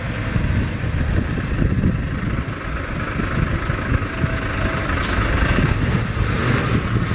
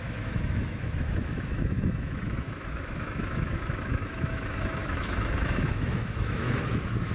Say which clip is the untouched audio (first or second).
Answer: first